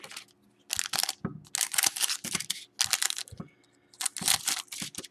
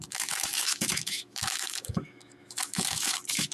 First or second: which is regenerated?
second